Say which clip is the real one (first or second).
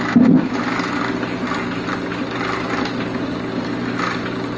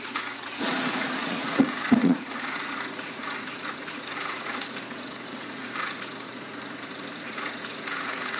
first